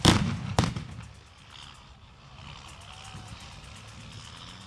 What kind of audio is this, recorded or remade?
recorded